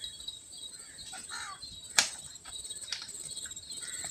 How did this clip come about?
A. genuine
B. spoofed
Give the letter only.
B